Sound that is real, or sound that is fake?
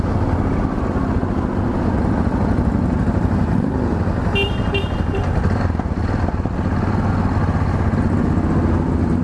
real